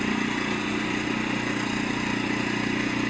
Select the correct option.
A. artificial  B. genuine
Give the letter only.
B